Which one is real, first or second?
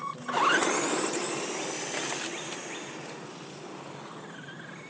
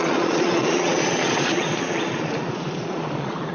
first